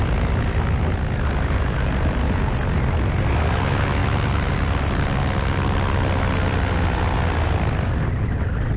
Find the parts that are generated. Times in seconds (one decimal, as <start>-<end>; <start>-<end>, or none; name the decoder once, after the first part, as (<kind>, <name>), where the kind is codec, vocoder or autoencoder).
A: none